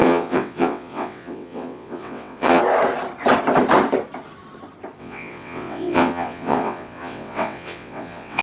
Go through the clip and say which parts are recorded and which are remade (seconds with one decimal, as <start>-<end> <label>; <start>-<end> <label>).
0.0-2.6 remade; 2.6-5.0 recorded; 5.0-8.4 remade